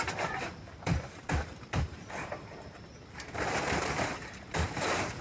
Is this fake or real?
fake